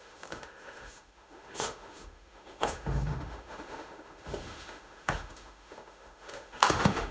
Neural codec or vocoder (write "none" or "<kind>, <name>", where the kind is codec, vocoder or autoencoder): autoencoder, DAC-VAE